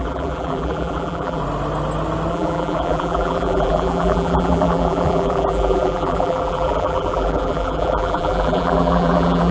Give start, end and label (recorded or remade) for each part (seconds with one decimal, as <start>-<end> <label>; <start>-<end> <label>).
0.0-1.4 remade; 1.4-2.3 recorded; 2.3-9.5 remade